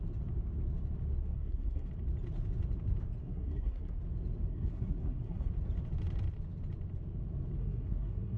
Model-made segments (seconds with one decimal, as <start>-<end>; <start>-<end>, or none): 1.2-1.9; 3.2-4.0; 4.5-5.5; 7.6-8.4